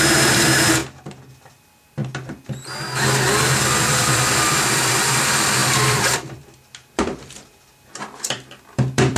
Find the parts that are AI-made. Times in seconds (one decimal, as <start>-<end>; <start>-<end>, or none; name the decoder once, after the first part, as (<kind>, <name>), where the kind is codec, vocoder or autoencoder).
0.0-0.8 (vocoder, BigVGAN v2); 1.3-2.0; 3.8-9.2